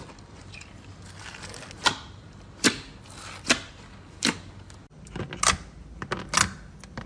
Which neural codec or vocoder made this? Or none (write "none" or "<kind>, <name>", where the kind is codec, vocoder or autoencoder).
none